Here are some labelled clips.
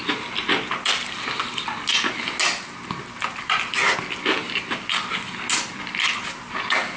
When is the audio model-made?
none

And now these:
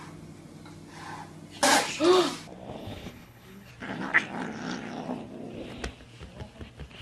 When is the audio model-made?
2.8-3.7 (codec, HILCodec)

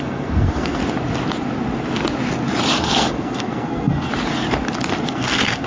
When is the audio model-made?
0.0-0.8 (codec, SNAC); 2.8-4.1; 5.1-5.7

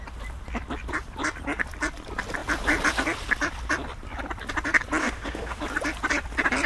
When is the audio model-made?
5.0-5.6 (autoencoder, DAC-VAE)

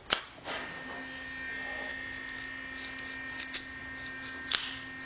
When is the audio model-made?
none

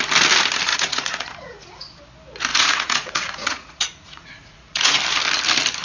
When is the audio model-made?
0.7-2.0 (vocoder, Vocos); 2.5-5.0

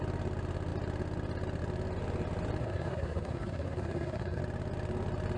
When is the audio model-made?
2.6-4.4 (codec, SNAC)